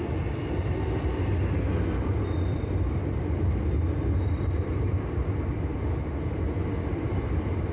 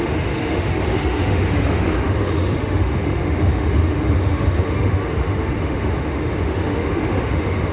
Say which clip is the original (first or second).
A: first